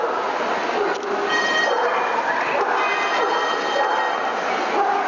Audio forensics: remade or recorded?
recorded